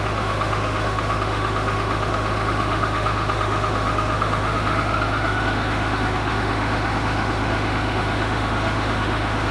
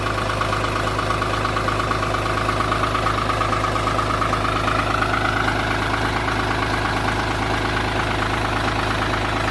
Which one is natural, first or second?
second